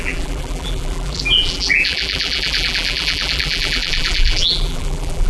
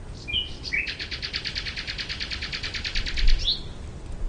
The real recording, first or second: second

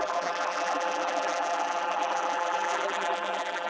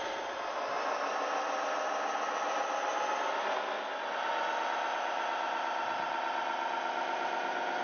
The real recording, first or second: second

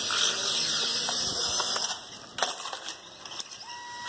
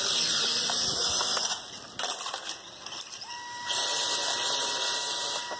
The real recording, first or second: first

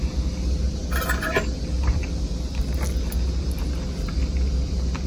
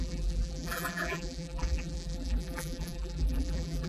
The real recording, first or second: first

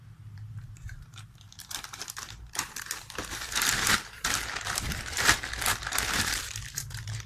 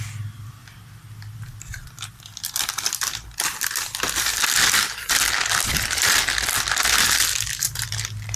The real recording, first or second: second